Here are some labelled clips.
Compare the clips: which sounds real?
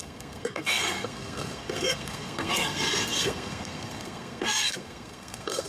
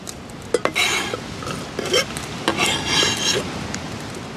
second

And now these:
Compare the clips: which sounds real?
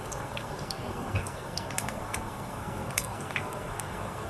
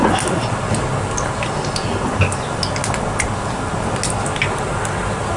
second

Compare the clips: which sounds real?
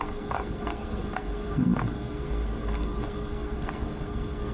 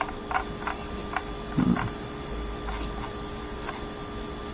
second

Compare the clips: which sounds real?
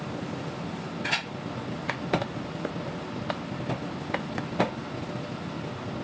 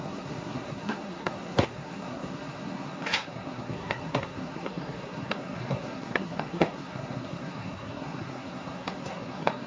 first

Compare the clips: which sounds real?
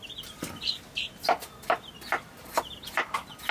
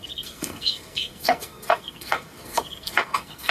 first